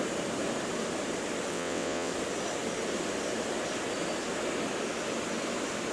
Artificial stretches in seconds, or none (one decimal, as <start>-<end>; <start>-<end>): 1.5-2.1